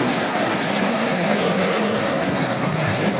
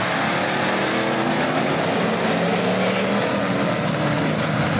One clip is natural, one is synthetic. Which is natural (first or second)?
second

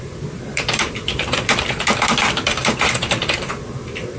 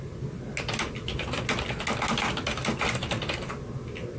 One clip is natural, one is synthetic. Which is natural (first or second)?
second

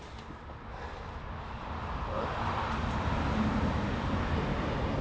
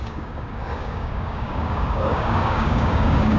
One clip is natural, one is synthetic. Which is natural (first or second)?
first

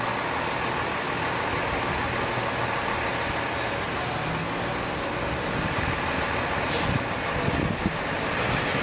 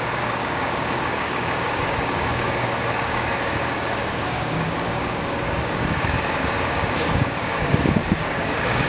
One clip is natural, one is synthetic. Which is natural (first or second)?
first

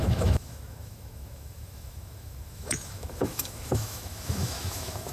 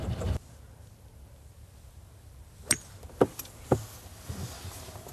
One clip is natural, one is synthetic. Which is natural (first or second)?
second